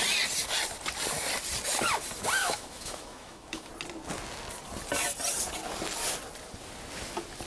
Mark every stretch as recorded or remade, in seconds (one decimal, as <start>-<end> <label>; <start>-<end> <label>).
0.0-2.4 recorded; 2.4-3.7 remade; 3.7-7.5 recorded

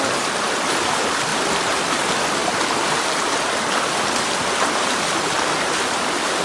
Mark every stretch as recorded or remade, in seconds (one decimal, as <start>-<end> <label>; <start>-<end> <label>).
0.0-6.4 recorded

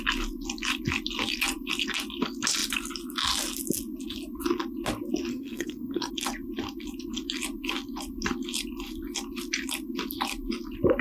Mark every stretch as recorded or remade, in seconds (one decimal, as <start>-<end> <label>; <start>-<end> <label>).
0.0-5.3 recorded; 5.3-6.1 remade; 6.1-11.0 recorded

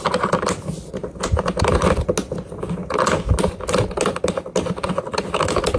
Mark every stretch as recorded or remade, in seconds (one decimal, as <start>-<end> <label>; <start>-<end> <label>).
0.0-5.8 recorded

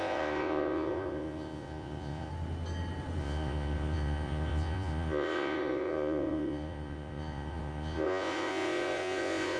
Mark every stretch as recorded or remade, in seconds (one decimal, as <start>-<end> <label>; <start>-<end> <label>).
0.0-2.3 remade; 2.3-3.2 recorded; 3.2-9.6 remade

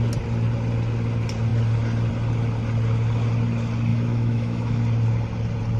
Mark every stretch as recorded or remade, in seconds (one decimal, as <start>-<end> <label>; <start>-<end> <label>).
0.0-3.9 recorded; 3.9-4.8 remade; 4.8-5.8 recorded